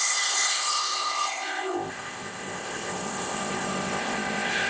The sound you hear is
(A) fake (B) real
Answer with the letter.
A